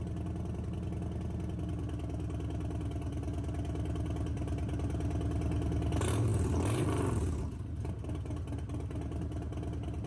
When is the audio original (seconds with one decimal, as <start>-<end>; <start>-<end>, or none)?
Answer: 0.0-6.3; 7.9-10.1